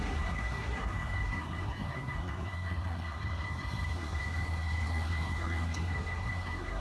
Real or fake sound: fake